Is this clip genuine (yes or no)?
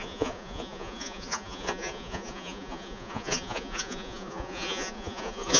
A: no